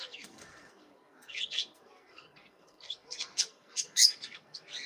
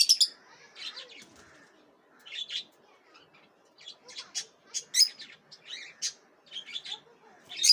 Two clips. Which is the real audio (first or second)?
second